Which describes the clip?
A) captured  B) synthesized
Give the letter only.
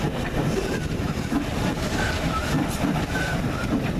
A